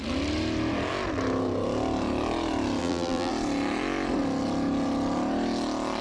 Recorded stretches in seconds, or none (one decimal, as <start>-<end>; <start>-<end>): 0.0-2.8; 3.3-6.0